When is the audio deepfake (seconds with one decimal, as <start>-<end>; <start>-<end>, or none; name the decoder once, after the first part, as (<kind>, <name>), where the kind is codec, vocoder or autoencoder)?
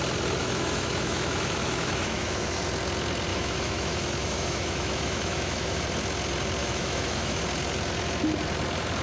0.4-2.6 (autoencoder, DAC-VAE); 3.3-5.8; 6.6-7.4